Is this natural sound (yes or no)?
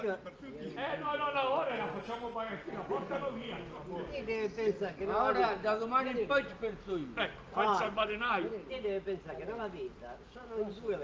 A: yes